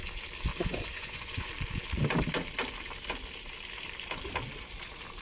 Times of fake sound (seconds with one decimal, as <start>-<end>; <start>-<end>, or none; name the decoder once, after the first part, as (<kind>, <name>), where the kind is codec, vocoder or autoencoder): 0.5-1.5 (vocoder, Vocos)